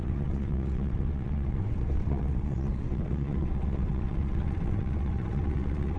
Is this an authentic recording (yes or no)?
no